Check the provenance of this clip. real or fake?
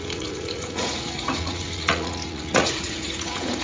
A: fake